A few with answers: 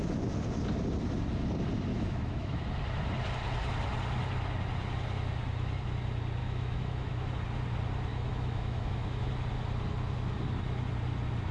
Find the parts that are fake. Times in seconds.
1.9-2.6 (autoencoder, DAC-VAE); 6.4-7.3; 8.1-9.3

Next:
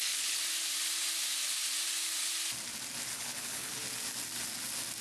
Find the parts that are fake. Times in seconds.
0.0-0.4 (codec, HILCodec); 3.1-3.8

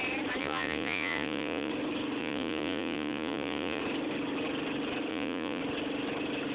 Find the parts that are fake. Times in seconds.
0.4-1.7 (vocoder, Vocos); 2.2-3.8; 5.1-5.6